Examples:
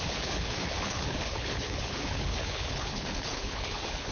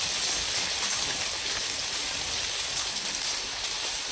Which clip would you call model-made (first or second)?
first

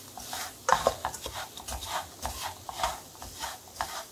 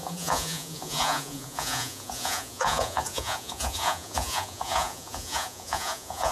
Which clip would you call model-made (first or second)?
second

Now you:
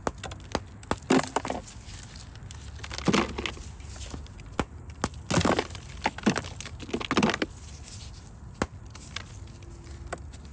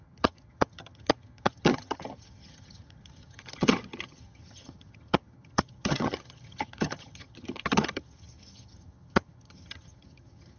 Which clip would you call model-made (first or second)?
second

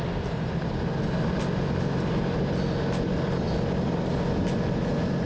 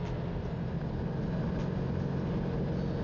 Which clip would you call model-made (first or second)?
first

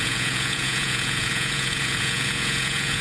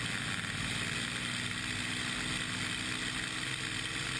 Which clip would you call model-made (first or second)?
first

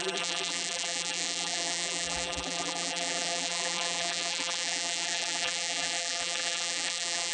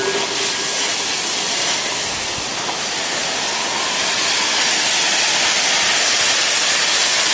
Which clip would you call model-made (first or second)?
first